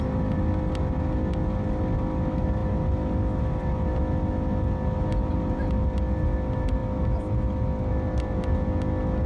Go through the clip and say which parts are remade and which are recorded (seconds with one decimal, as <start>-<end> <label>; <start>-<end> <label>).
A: 0.0-9.3 recorded